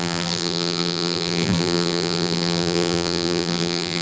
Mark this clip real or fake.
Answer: fake